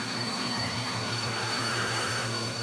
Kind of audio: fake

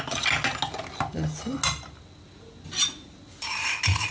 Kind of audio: real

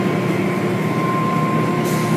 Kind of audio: real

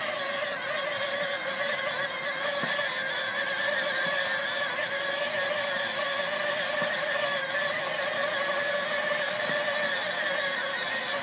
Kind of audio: real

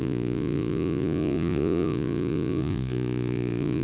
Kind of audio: fake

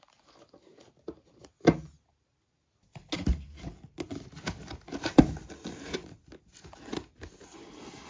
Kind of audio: real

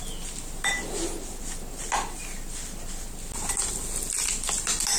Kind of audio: real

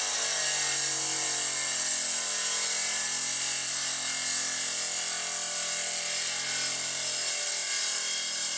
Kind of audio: real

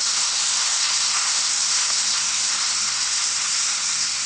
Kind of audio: fake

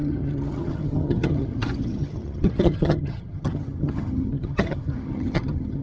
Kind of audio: fake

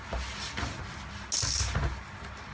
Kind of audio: real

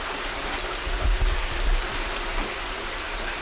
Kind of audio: real